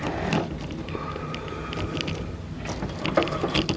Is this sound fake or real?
real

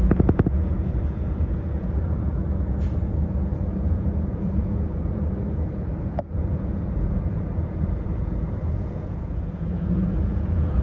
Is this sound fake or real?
fake